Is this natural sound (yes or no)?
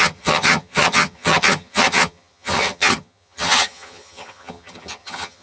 no